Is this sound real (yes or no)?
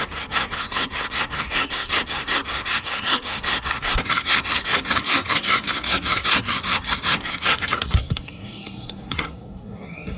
no